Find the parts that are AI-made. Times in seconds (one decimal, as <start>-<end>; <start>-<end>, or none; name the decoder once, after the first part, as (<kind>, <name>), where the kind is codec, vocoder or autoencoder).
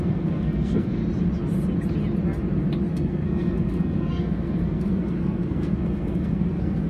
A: 0.0-1.0 (codec, SNAC); 2.9-6.9